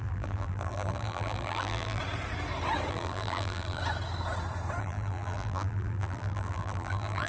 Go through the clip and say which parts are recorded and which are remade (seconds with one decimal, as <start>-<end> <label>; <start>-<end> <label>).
0.0-2.0 remade; 2.0-2.9 recorded; 2.9-3.8 remade; 3.8-4.8 recorded; 4.8-7.3 remade